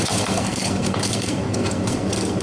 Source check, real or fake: fake